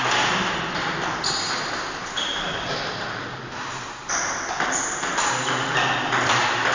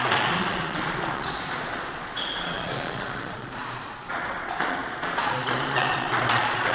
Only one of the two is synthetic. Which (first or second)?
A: second